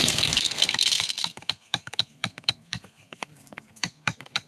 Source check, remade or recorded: remade